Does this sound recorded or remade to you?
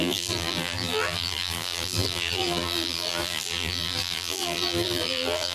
remade